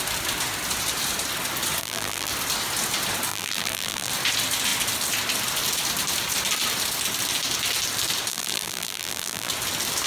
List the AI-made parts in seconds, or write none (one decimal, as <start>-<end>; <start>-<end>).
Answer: 1.8-2.3; 3.3-4.1; 8.3-9.5